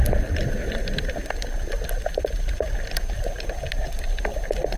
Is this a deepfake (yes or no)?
no